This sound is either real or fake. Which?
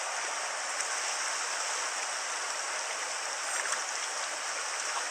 real